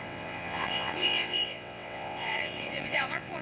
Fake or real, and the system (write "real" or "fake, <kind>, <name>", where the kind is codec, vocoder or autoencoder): fake, vocoder, WaveNeXt